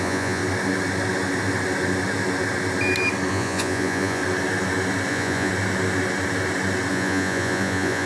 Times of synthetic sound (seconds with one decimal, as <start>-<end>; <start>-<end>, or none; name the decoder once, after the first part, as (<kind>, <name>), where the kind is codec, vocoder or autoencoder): 0.0-0.4 (vocoder, Vocos); 3.3-4.2; 5.1-5.5; 6.9-8.1